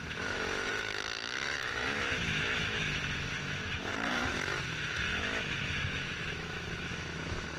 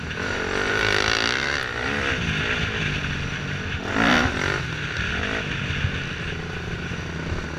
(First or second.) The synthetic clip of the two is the first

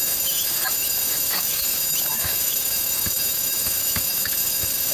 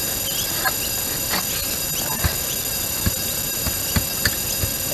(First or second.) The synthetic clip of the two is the first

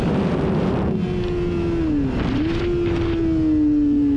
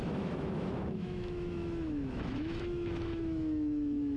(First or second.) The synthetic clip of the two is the second